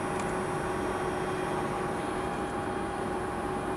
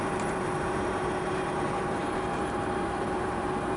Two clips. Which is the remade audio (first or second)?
second